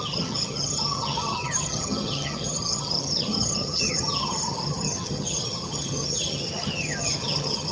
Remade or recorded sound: remade